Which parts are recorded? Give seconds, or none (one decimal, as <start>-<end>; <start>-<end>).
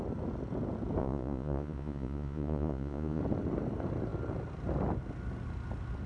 0.0-1.0; 3.2-6.1